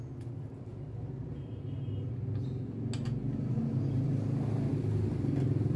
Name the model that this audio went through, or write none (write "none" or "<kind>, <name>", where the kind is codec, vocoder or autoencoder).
none